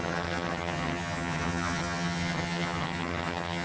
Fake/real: fake